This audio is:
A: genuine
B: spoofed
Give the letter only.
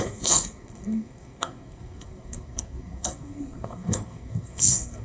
B